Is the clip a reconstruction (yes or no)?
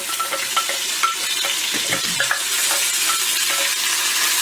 no